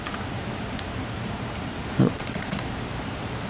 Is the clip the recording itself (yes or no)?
no